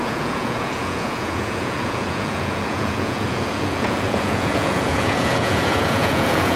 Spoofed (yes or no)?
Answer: yes